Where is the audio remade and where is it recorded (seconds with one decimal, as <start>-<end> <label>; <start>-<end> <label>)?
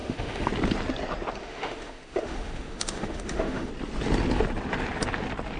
0.0-0.5 remade; 0.5-1.4 recorded; 1.4-3.7 remade; 3.7-5.6 recorded